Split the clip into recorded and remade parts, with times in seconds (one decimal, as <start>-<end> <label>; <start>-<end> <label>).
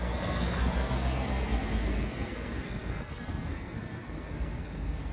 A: 0.0-5.1 remade